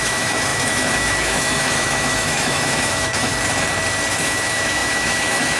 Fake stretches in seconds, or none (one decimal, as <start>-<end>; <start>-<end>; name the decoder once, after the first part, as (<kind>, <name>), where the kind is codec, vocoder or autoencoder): 0.0-3.3 (autoencoder, DAC-VAE); 4.1-5.6